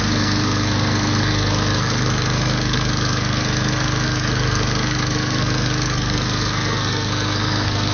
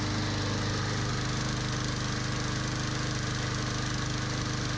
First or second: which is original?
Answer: second